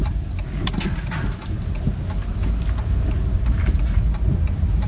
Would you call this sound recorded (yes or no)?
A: yes